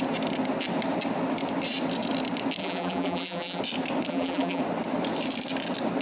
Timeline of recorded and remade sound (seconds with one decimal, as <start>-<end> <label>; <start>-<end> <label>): 0.0-2.6 recorded; 2.6-3.6 remade; 3.6-4.1 recorded; 4.1-4.6 remade; 4.6-6.0 recorded